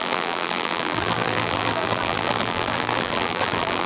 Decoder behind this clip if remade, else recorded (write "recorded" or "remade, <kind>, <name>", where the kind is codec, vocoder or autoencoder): remade, vocoder, BigVGAN v2